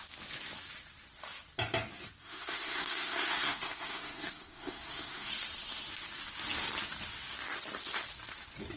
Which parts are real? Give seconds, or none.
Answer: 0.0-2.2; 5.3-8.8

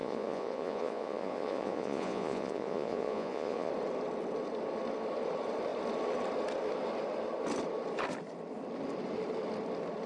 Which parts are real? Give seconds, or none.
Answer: 3.7-10.1

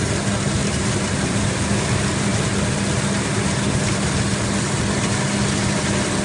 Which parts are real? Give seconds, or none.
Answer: 0.0-0.6; 1.6-6.2